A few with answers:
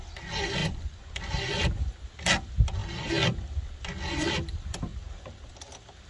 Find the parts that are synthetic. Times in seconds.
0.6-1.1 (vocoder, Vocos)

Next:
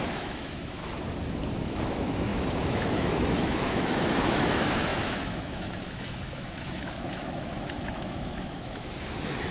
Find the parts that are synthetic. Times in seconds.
0.0-0.8 (autoencoder, DAC-VAE); 1.6-9.5

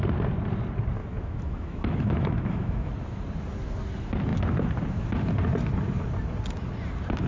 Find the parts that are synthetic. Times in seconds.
1.0-2.9 (autoencoder, DAC-VAE)

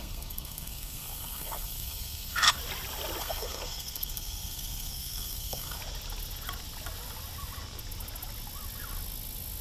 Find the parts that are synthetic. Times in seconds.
0.0-2.6 (codec, SNAC); 3.2-5.8